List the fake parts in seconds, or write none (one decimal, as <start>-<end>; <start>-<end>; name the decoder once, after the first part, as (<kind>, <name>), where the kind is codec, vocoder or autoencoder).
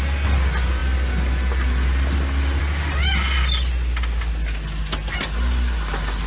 none